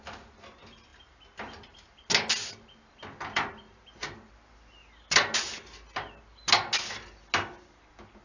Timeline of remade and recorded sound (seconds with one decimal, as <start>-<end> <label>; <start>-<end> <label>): 0.0-8.2 recorded